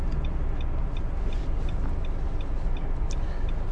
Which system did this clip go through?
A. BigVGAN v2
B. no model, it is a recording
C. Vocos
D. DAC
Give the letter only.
B